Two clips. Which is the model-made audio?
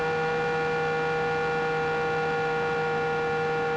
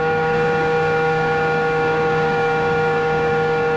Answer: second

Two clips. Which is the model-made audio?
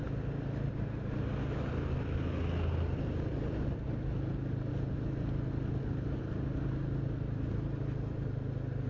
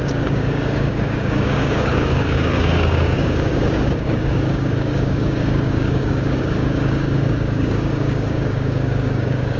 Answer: second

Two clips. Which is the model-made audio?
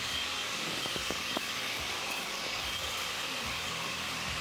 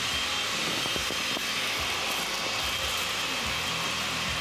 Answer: first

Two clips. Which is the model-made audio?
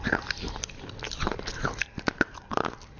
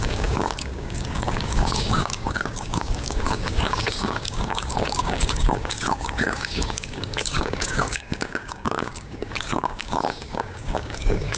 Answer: second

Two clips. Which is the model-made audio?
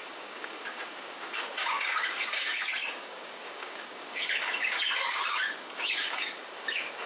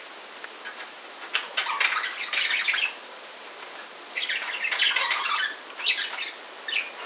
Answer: first